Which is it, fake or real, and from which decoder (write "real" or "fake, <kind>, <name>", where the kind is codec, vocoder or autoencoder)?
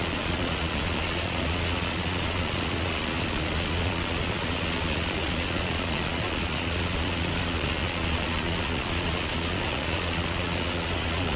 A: fake, vocoder, Vocos